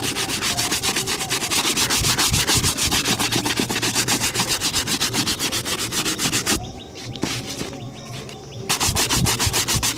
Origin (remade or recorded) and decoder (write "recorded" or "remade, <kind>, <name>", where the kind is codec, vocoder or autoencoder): recorded